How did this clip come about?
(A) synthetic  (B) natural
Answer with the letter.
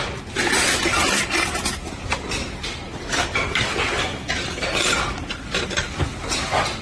B